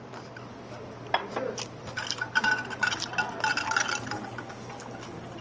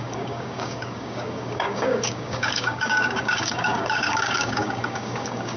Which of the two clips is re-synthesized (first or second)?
second